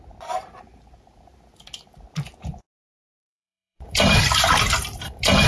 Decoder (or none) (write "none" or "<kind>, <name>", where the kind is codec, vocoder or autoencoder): vocoder, BigVGAN v2